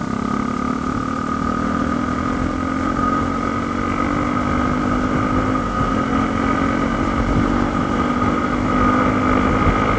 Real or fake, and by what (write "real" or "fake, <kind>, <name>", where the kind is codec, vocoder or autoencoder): real